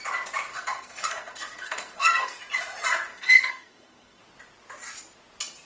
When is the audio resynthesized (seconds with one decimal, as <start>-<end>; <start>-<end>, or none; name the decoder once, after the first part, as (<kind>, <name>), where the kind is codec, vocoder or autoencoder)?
0.5-2.4 (codec, SNAC); 3.1-4.2